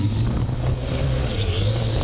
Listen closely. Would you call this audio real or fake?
fake